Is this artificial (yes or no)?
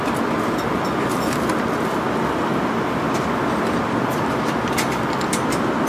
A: no